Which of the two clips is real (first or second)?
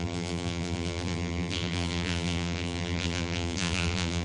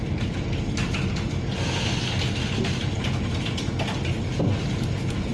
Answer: second